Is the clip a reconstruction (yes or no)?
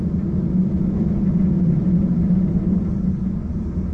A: no